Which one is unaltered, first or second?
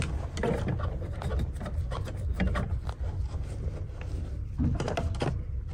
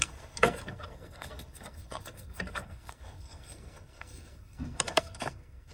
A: first